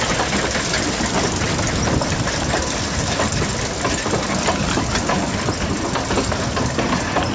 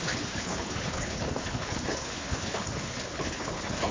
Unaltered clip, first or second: first